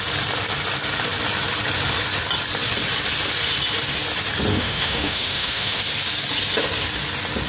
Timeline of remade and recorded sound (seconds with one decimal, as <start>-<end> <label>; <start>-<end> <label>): 0.0-4.5 recorded; 4.5-5.8 remade; 5.8-7.5 recorded